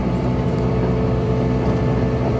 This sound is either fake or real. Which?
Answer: fake